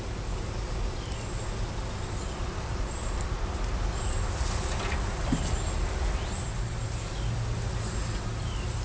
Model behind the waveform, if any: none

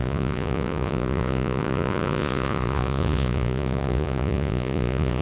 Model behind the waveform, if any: vocoder, Vocos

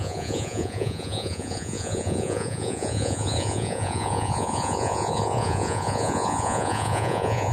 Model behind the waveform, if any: vocoder, Vocos